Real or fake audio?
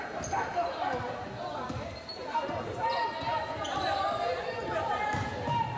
real